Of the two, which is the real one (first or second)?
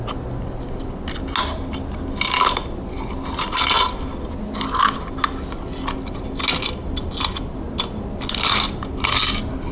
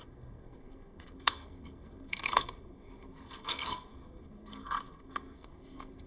first